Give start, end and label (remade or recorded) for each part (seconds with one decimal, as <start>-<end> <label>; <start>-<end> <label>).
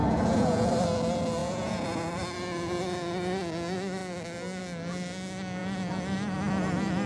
0.0-0.7 remade; 0.7-1.4 recorded; 1.4-2.1 remade; 2.1-7.1 recorded